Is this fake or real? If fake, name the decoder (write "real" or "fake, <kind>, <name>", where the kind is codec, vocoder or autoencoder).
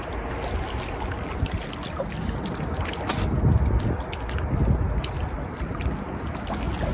real